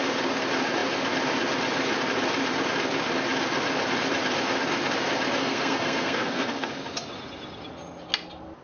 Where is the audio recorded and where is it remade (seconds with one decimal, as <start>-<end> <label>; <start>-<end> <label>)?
0.0-5.4 recorded; 5.4-6.7 remade; 6.7-8.6 recorded